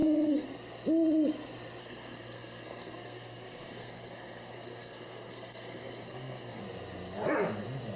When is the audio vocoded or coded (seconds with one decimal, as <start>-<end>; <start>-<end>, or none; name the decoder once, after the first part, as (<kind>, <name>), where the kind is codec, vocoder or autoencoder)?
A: 0.0-0.5 (codec, SNAC); 1.8-6.6